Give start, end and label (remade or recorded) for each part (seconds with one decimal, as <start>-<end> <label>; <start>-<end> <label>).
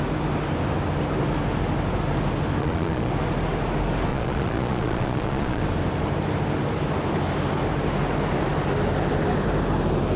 0.0-2.6 recorded; 2.6-3.1 remade; 3.1-4.1 recorded; 4.1-5.6 remade; 5.6-10.2 recorded